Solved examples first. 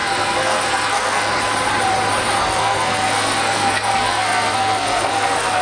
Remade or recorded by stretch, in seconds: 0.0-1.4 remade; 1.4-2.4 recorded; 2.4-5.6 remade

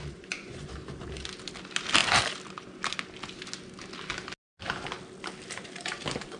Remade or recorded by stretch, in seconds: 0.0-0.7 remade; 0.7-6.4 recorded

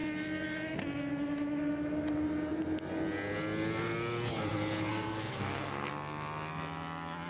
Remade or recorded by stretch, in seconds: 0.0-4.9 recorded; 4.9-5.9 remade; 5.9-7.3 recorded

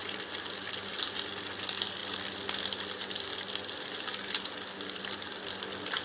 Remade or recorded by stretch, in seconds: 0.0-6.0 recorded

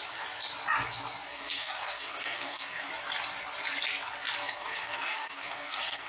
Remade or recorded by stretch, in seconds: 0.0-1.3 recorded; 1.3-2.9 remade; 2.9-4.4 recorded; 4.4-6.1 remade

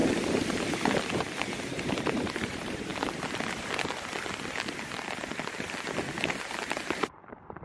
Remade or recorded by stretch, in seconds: 0.0-1.5 recorded; 1.5-2.9 remade; 2.9-7.1 recorded; 7.1-7.6 remade

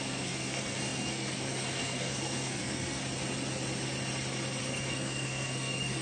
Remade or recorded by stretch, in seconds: 0.0-3.0 remade; 3.0-4.6 recorded; 4.6-6.0 remade